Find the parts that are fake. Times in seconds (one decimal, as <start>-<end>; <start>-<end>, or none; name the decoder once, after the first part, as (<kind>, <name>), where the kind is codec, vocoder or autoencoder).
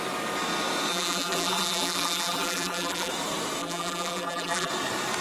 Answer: 0.9-3.1 (vocoder, BigVGAN v2); 3.6-4.7